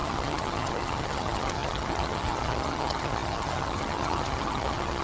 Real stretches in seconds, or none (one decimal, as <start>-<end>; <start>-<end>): none